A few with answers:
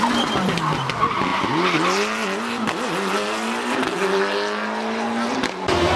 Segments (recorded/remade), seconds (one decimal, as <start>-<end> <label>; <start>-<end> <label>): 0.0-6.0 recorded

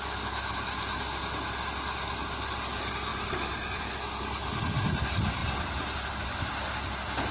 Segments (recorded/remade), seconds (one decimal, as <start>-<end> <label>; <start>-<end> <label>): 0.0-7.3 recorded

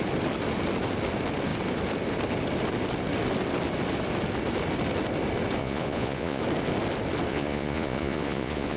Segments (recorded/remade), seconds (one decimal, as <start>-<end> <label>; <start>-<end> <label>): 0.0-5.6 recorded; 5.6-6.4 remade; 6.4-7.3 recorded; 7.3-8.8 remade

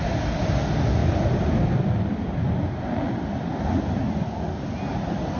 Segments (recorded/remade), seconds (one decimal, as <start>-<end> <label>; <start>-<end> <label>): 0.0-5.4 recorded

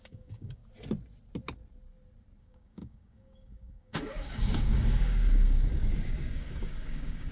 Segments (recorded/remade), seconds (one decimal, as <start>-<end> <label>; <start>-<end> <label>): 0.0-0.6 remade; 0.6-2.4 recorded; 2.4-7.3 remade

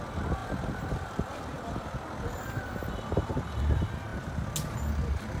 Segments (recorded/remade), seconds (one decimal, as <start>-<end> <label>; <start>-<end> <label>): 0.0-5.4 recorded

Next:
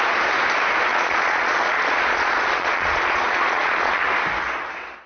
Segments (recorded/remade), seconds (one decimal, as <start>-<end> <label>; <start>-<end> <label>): 0.0-0.9 recorded; 0.9-4.0 remade; 4.0-5.1 recorded